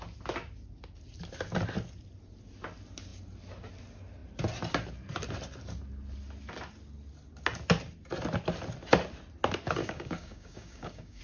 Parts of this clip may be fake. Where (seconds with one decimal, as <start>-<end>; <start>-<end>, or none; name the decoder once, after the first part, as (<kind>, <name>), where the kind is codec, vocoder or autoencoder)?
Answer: 9.8-11.2 (codec, DAC)